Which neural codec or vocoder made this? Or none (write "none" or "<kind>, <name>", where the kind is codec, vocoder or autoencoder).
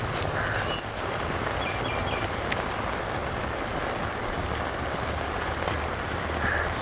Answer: none